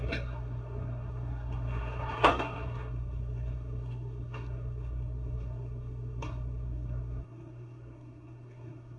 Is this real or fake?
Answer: fake